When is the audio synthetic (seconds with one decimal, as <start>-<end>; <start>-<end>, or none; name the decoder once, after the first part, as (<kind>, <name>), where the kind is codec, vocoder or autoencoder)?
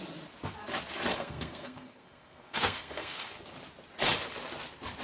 1.1-3.4 (codec, SNAC)